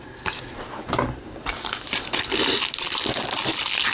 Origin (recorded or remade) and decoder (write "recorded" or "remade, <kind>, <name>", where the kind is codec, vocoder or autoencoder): recorded